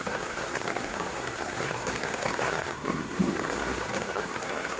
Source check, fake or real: fake